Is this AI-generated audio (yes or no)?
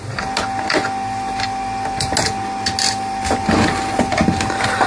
no